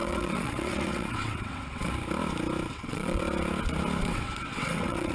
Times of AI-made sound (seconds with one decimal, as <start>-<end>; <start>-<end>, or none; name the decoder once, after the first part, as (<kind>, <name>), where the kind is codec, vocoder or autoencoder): 0.0-1.9 (vocoder, WaveNeXt); 2.7-3.2; 4.0-5.1